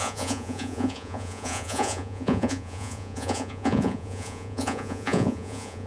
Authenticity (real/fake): fake